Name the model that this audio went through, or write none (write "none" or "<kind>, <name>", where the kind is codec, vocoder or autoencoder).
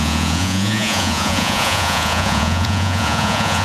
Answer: vocoder, Vocos